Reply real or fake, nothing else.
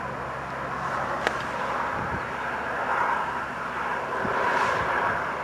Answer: real